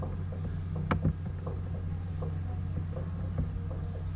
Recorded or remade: recorded